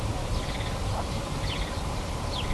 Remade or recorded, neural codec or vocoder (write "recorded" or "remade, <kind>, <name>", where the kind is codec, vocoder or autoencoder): recorded